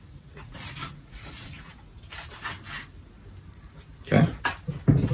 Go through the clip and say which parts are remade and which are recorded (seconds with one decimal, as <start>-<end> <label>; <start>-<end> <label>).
0.0-1.7 remade; 1.7-5.1 recorded

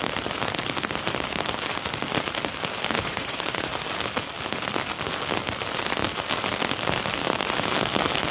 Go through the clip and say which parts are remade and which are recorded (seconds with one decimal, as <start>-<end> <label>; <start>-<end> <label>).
0.0-3.0 recorded; 3.0-3.7 remade; 3.7-8.3 recorded

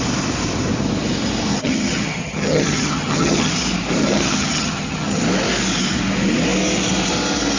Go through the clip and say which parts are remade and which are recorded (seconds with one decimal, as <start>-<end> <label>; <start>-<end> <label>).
0.0-1.5 recorded; 1.5-3.5 remade; 3.5-4.0 recorded; 4.0-5.2 remade; 5.2-7.6 recorded

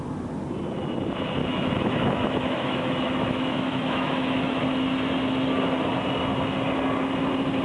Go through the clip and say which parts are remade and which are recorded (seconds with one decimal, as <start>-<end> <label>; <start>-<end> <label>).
0.0-1.4 recorded; 1.4-4.6 remade; 4.6-7.6 recorded

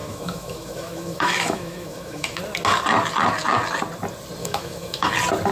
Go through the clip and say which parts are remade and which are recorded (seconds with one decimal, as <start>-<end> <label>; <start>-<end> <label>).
0.0-2.4 remade; 2.4-4.4 recorded; 4.4-5.1 remade; 5.1-5.5 recorded